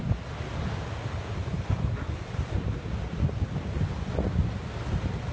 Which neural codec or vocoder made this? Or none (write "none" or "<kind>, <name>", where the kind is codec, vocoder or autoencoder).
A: none